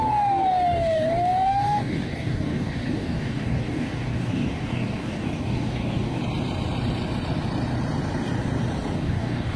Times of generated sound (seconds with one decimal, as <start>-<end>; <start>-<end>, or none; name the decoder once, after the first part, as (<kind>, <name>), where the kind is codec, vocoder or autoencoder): 0.0-6.2 (codec, DAC); 9.0-9.6